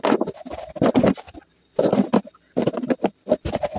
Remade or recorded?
recorded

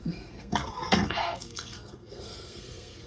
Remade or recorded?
remade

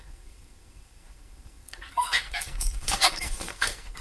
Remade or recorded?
remade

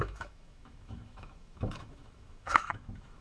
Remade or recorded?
remade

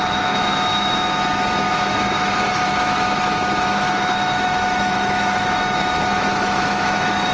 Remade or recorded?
remade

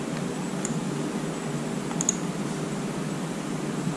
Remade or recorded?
recorded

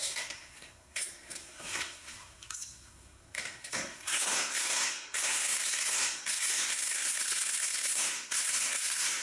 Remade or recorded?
remade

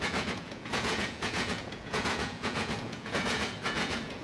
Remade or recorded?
remade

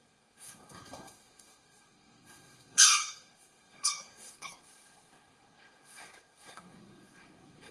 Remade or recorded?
remade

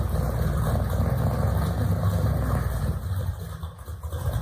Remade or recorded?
recorded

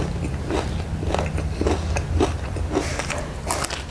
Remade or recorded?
recorded